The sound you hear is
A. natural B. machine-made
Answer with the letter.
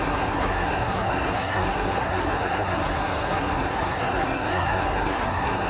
B